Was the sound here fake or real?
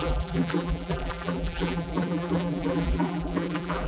fake